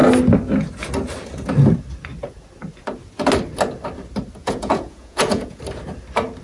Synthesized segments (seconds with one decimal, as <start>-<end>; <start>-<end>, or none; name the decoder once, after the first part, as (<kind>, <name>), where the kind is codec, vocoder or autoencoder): 4.4-5.6 (vocoder, Vocos)